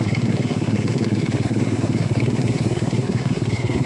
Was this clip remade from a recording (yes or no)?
yes